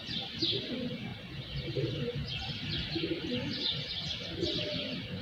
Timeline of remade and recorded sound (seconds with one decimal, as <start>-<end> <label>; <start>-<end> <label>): 0.0-5.2 recorded